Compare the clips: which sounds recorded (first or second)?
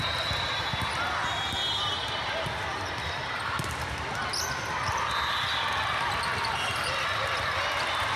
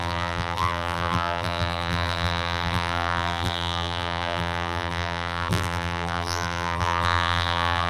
first